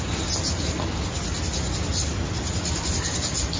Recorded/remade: recorded